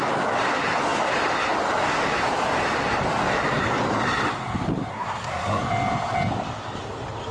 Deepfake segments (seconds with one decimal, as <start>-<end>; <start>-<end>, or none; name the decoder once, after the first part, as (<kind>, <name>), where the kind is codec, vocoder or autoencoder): 4.9-5.6 (codec, SNAC)